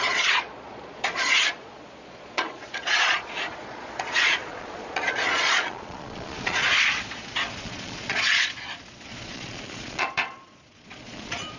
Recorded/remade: remade